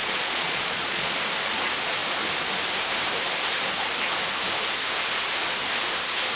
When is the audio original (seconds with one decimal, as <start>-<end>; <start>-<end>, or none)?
1.2-6.4